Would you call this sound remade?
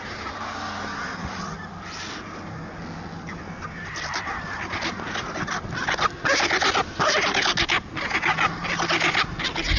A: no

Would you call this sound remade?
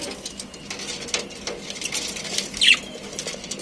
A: no